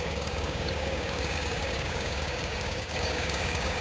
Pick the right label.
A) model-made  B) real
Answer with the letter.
A